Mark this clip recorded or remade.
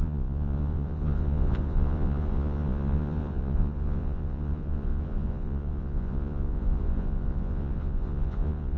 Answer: remade